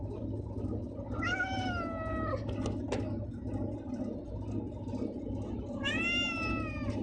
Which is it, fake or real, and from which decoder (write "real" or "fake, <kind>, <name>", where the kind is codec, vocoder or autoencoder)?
real